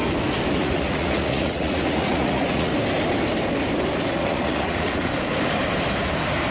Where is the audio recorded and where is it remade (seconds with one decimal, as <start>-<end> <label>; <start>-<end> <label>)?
0.0-0.6 recorded; 0.6-2.7 remade; 2.7-4.1 recorded; 4.1-5.1 remade; 5.1-6.5 recorded

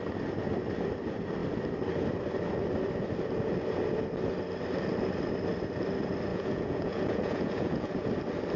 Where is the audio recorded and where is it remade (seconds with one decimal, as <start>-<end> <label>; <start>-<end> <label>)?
0.0-6.3 recorded; 6.3-8.1 remade; 8.1-8.6 recorded

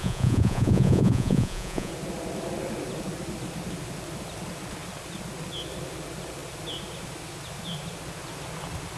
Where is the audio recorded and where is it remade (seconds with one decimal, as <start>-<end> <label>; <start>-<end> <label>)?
0.0-1.9 remade; 1.9-9.0 recorded